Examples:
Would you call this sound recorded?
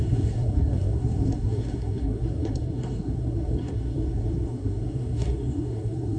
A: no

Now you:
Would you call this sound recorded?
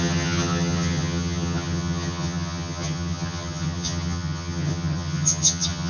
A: no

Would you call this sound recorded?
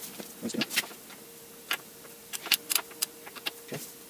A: yes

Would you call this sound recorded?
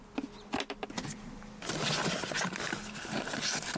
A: yes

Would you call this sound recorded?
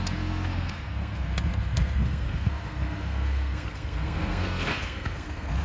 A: no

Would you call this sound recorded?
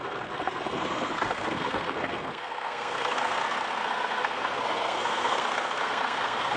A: no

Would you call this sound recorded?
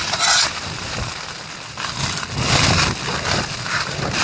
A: yes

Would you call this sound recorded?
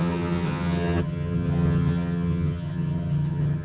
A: no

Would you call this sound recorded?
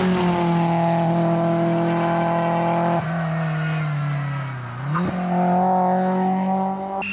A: yes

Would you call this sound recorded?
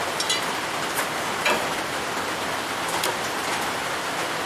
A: no